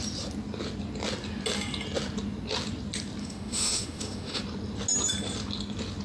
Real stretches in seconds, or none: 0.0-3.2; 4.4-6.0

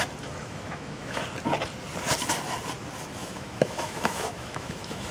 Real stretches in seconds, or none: 0.0-0.4; 1.2-3.2

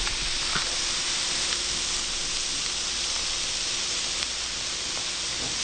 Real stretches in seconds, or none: 0.0-5.6

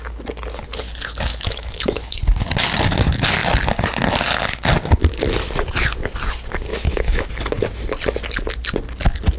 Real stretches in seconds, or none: 0.0-1.3; 2.1-6.7; 7.3-9.4

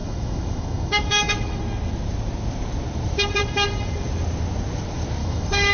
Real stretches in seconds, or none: 1.6-5.2

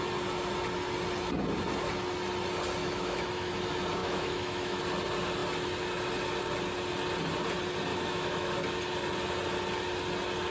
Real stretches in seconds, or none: 0.0-2.8; 3.5-4.0; 4.8-7.9; 8.5-10.5